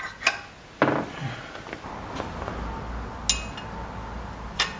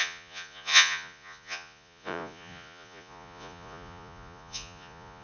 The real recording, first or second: first